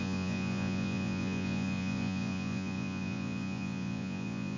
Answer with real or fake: fake